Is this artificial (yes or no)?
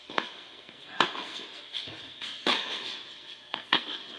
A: yes